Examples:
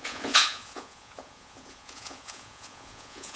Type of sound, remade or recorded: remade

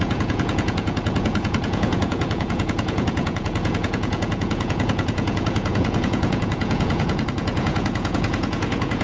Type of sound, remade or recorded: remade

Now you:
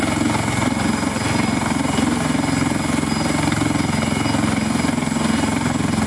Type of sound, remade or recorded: recorded